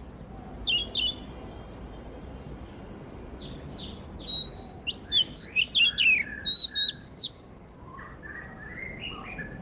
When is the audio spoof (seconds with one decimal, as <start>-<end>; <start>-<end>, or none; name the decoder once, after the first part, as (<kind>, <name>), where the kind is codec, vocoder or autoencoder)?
none